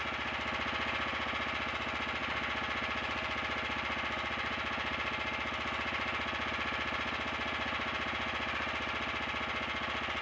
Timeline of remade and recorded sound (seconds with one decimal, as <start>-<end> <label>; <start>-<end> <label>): 0.0-10.2 recorded